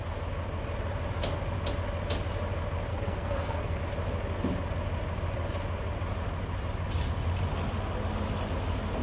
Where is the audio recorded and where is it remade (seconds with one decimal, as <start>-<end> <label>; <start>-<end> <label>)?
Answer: 0.0-2.9 recorded; 2.9-3.8 remade; 3.8-9.0 recorded